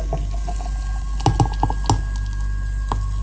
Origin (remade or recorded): recorded